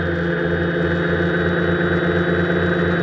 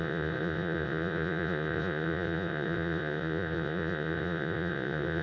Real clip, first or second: first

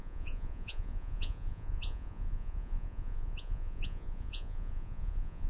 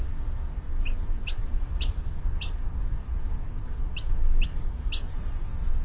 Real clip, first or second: second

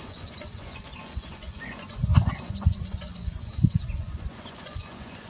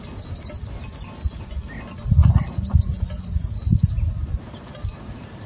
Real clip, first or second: second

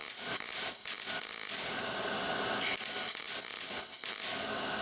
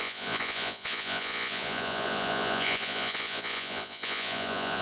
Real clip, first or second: first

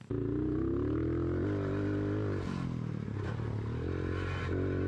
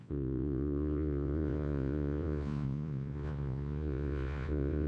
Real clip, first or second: first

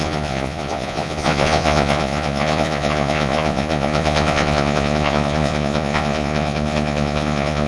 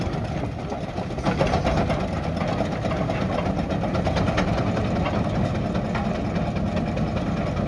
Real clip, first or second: second